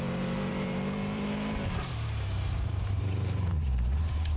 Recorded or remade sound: remade